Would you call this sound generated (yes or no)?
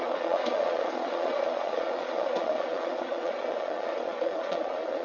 yes